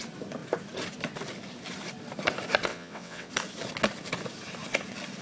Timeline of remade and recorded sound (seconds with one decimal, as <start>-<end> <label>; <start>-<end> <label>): 0.0-2.7 recorded; 2.7-3.3 remade; 3.3-5.2 recorded